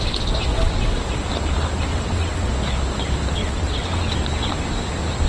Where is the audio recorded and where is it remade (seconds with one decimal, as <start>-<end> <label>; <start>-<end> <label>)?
0.0-0.5 recorded; 0.5-1.0 remade; 1.0-1.9 recorded; 1.9-2.5 remade; 2.5-3.4 recorded; 3.4-4.1 remade; 4.1-5.3 recorded